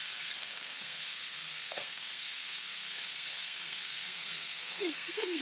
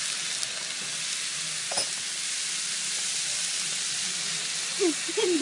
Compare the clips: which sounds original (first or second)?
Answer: second